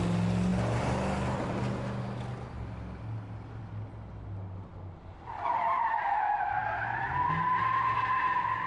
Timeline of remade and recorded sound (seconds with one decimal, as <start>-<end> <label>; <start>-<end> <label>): 0.0-8.7 recorded